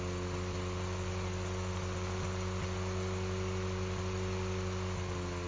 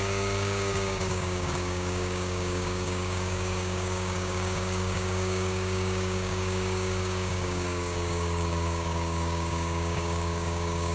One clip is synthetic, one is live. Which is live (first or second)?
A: first